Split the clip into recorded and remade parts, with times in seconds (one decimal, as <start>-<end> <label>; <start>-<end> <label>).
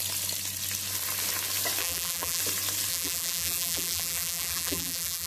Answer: 0.0-1.8 recorded; 1.8-2.4 remade; 2.4-2.9 recorded; 2.9-5.3 remade